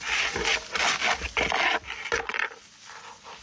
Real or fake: real